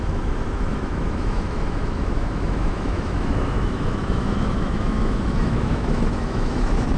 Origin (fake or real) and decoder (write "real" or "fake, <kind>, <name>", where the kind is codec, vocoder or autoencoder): fake, autoencoder, DAC-VAE